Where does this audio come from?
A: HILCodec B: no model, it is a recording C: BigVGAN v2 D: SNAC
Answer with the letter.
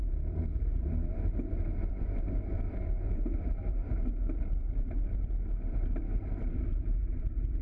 C